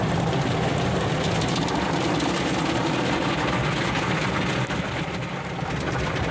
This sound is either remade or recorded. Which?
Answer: recorded